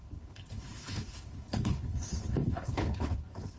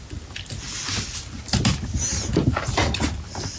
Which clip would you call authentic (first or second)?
second